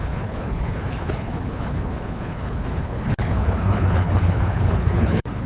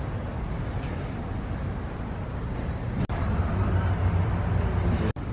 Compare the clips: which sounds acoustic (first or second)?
second